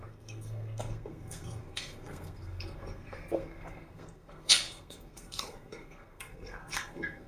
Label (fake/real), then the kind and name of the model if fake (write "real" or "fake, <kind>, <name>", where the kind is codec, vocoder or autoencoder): fake, codec, SNAC